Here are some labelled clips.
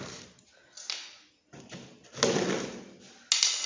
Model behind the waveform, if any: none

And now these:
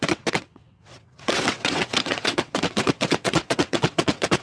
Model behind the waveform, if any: vocoder, WaveNeXt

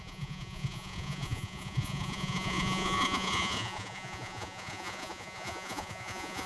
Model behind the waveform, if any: vocoder, Vocos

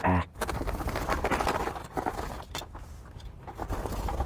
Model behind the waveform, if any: none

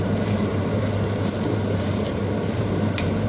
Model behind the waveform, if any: vocoder, BigVGAN v2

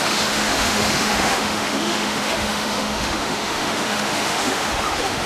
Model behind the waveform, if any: autoencoder, DAC-VAE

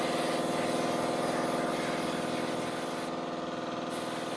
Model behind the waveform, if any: none